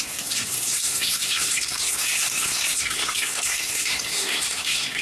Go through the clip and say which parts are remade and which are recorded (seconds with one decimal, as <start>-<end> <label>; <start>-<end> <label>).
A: 0.0-5.0 remade